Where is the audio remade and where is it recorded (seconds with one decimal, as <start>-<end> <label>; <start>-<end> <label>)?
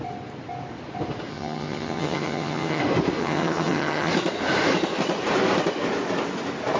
0.0-1.3 recorded; 1.3-2.8 remade; 2.8-3.2 recorded; 3.2-4.1 remade; 4.1-6.8 recorded